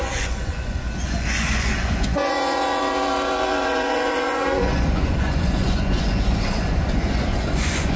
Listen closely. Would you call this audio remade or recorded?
remade